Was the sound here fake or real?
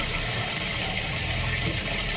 fake